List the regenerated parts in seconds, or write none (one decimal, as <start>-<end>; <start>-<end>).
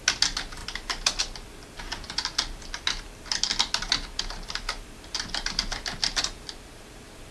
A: none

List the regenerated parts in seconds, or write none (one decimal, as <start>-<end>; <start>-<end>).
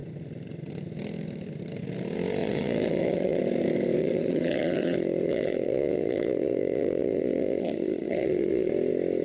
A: 2.4-3.4; 4.0-8.7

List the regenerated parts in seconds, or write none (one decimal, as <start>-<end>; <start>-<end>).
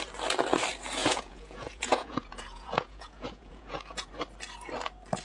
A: 1.0-4.1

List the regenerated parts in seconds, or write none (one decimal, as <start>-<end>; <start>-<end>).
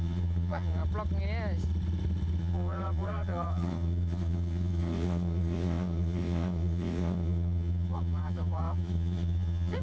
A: 0.0-0.8; 2.4-9.8